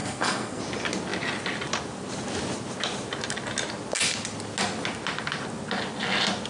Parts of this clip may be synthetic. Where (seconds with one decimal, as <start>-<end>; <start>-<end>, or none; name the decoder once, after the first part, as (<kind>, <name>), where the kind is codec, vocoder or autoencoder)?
0.0-0.6 (codec, SNAC)